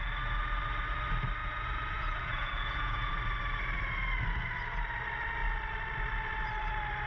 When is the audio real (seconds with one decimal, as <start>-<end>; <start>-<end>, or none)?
0.0-1.4; 3.1-7.1